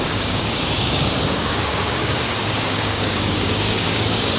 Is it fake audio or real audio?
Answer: fake